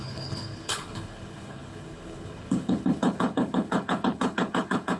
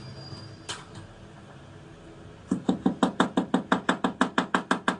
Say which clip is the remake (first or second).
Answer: first